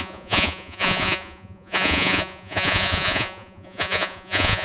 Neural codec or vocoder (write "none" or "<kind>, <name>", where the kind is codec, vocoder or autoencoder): vocoder, Vocos